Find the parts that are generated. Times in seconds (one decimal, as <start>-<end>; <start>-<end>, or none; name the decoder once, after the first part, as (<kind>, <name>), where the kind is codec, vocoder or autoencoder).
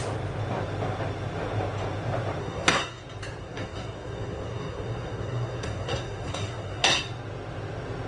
2.4-3.0 (codec, SNAC); 3.4-7.0